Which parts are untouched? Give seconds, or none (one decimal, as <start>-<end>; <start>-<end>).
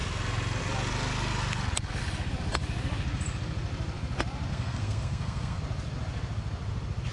0.0-4.5; 5.6-7.1